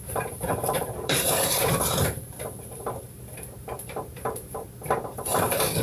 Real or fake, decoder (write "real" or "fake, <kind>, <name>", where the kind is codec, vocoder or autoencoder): fake, vocoder, BigVGAN v2